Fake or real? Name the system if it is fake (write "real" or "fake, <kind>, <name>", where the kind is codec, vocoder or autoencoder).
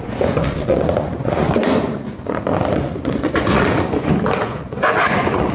fake, vocoder, Vocos